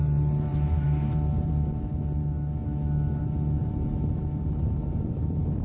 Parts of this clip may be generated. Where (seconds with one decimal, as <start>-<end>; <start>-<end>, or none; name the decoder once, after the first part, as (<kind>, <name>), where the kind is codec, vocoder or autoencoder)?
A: 0.5-1.5 (vocoder, BigVGAN v2); 3.6-5.6